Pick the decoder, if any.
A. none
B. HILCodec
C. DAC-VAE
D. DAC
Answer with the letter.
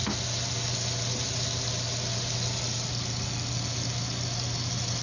A